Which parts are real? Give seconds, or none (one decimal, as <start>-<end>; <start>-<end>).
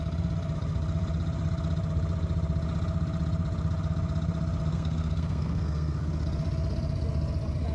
0.0-4.7; 6.1-7.7